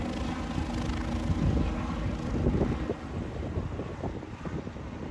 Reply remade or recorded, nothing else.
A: recorded